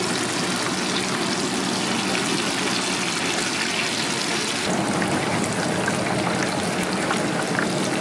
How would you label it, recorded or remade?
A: recorded